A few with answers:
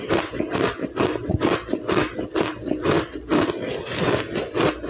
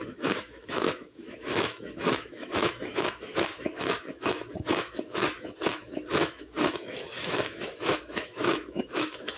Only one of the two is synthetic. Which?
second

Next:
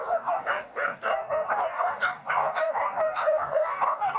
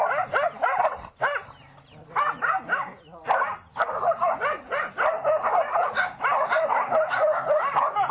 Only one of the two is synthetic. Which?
first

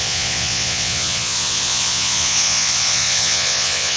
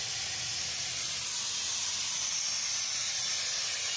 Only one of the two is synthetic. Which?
first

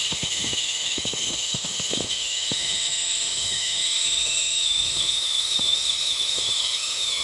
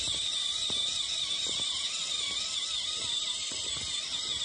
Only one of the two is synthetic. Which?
first